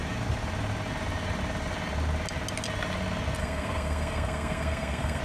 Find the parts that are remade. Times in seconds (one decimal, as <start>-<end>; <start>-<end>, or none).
3.4-5.2